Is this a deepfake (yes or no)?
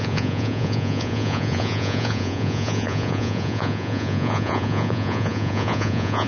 yes